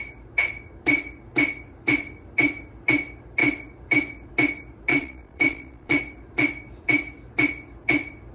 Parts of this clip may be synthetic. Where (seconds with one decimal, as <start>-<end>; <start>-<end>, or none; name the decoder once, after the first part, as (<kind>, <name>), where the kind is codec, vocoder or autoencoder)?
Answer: 4.9-6.0 (vocoder, Vocos)